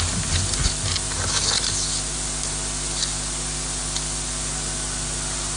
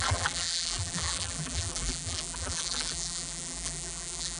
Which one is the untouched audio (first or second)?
first